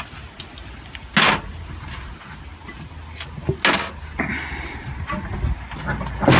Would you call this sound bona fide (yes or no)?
yes